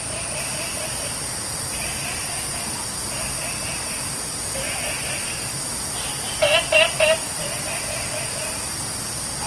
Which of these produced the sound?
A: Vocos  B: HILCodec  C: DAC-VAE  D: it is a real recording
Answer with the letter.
D